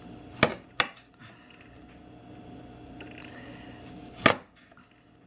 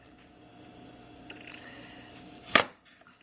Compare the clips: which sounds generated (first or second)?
second